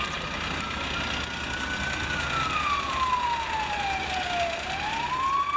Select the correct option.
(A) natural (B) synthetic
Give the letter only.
A